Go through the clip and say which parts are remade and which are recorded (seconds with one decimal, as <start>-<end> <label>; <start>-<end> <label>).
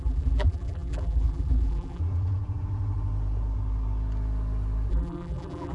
0.0-2.0 remade; 2.0-4.9 recorded; 4.9-5.7 remade